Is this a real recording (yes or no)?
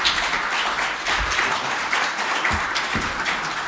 no